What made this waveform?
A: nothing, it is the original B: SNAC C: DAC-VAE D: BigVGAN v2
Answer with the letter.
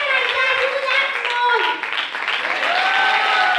A